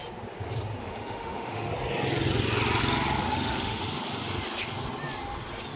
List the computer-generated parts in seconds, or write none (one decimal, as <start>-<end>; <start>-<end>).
0.8-1.7; 3.2-3.8